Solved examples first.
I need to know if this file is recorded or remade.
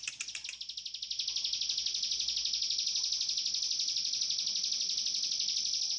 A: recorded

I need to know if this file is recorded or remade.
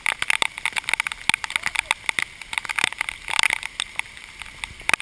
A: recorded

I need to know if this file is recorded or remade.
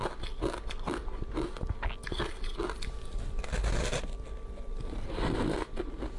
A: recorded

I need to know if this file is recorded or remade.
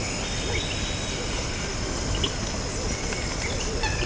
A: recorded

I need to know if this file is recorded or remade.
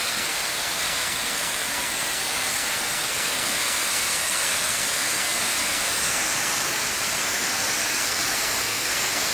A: remade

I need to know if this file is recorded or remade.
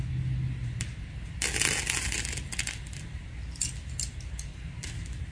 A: recorded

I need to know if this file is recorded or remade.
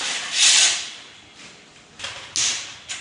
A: recorded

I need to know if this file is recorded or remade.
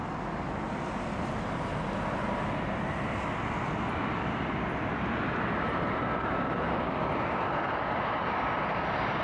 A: recorded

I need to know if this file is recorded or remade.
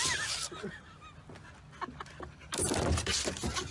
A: recorded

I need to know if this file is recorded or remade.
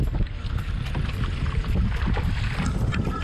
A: recorded